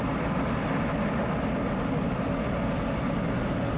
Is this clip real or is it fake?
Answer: real